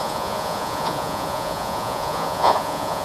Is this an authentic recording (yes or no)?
no